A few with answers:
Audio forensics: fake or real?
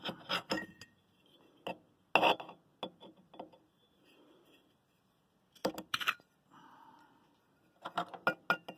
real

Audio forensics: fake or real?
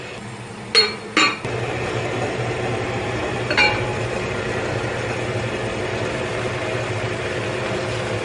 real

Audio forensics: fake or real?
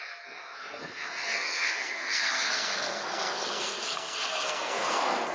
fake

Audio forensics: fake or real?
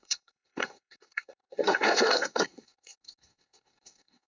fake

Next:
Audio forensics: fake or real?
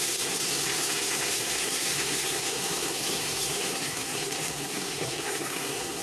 fake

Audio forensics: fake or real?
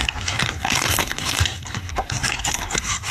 fake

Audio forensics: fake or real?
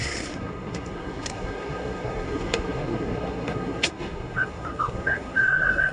fake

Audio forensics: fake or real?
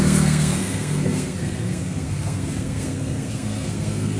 fake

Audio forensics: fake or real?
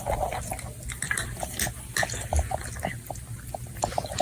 real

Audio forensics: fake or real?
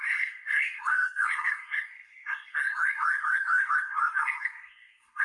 fake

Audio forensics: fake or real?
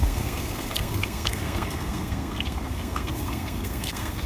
fake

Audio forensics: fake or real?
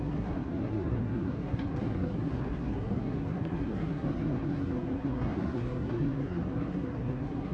fake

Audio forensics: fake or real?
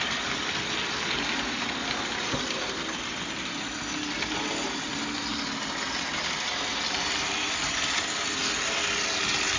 real